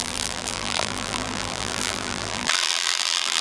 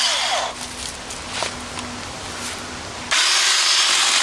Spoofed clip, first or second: first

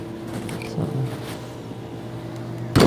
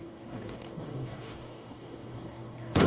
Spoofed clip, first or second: second